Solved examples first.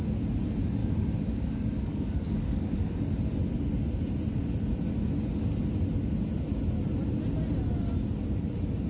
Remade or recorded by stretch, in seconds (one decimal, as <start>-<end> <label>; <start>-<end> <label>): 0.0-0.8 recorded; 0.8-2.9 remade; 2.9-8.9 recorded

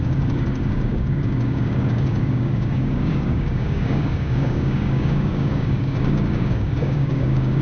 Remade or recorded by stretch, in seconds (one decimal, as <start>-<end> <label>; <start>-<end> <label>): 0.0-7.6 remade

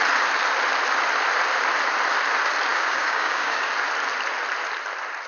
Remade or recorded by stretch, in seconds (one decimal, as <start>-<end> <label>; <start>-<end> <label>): 0.0-2.7 recorded; 2.7-3.7 remade; 3.7-5.3 recorded

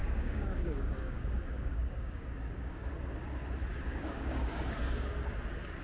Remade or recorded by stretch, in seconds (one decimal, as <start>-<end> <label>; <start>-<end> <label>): 0.0-2.9 remade; 2.9-3.7 recorded; 3.7-5.1 remade; 5.1-5.8 recorded